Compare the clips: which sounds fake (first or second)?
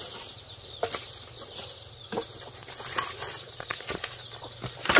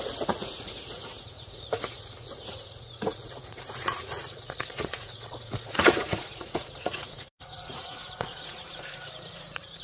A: second